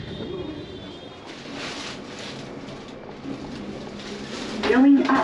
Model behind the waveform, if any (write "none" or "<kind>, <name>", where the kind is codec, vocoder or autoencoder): none